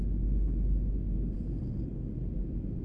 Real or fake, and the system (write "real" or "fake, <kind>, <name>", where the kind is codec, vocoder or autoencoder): real